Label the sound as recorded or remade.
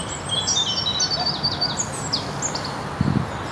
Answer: recorded